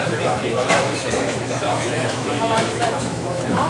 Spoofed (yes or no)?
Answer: yes